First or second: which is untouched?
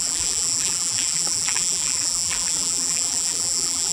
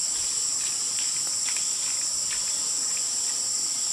second